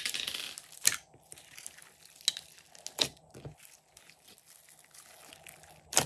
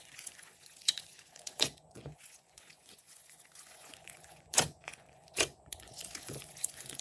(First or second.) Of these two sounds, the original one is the first